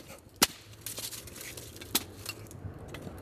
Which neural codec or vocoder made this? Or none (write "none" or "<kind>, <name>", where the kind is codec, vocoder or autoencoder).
none